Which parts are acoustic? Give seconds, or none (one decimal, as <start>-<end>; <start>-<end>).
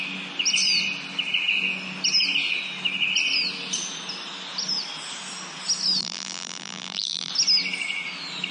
0.0-6.0; 7.3-8.5